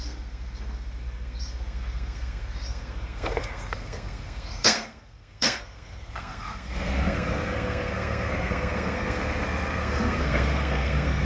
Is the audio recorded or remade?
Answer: remade